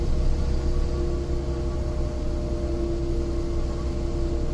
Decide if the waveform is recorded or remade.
recorded